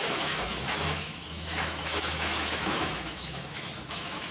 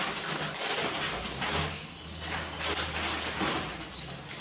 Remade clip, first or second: first